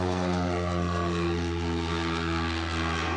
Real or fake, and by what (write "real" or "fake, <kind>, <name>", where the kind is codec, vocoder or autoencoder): fake, codec, SNAC